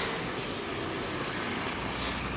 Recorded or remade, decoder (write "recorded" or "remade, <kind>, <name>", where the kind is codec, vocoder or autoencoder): recorded